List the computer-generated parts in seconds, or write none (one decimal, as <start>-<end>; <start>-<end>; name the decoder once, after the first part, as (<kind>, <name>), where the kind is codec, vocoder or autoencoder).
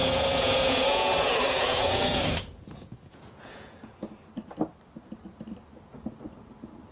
0.0-4.1 (vocoder, Vocos)